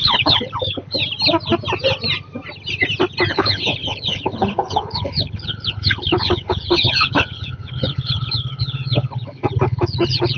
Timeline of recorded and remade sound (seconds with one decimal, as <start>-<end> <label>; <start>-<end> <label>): 0.0-1.0 remade; 1.0-3.3 recorded; 3.3-10.4 remade